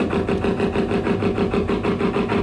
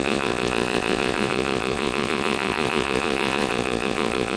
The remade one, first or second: second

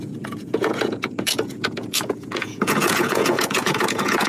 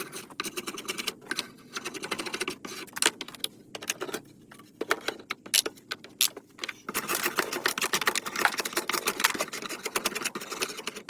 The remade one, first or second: first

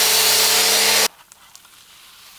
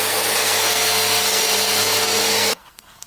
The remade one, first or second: second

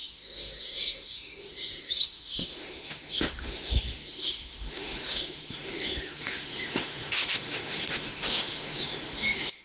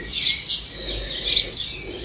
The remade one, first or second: first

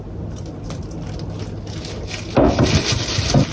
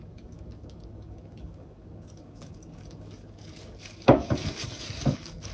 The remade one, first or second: second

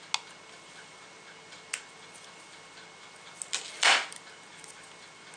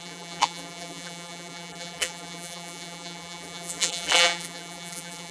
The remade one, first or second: second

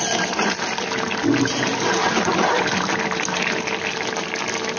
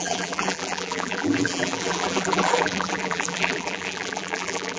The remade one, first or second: second